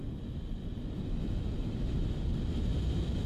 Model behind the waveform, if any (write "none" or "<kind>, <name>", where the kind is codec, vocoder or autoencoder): none